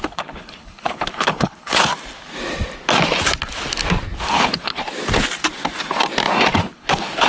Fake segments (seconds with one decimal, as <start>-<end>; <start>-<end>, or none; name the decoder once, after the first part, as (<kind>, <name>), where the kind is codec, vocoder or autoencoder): 0.0-1.9 (codec, HILCodec); 4.3-4.8; 6.6-7.3